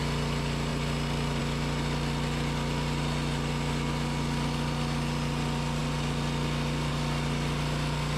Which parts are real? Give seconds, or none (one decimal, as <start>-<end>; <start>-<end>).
0.0-8.2